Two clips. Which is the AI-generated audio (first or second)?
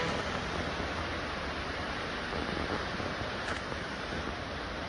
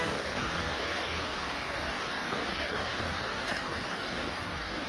second